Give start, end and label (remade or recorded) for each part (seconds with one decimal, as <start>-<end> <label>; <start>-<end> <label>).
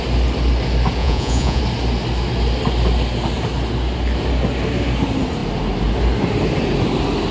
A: 0.0-1.0 recorded; 1.0-1.6 remade; 1.6-7.3 recorded